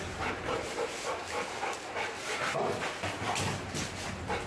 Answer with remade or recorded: recorded